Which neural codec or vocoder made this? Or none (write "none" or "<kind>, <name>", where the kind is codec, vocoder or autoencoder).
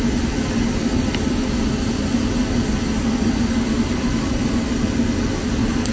none